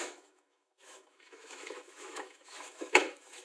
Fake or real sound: fake